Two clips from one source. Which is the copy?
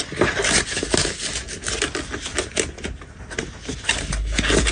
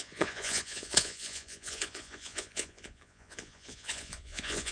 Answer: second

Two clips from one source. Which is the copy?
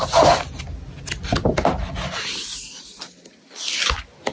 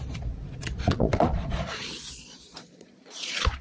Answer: second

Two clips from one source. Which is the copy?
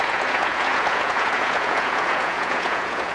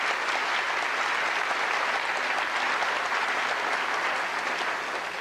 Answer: first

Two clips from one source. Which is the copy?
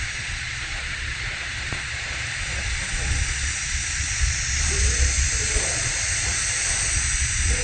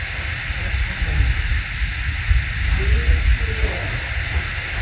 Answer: first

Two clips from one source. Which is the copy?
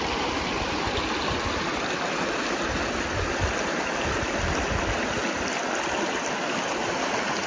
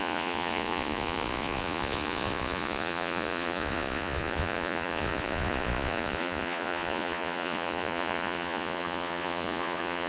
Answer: second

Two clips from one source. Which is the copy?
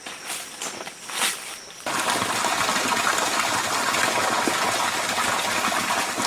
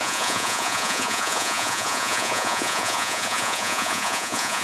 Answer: second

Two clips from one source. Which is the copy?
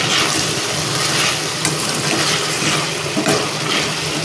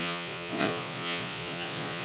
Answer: second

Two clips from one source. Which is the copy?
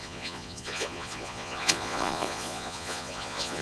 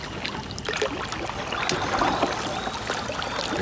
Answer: first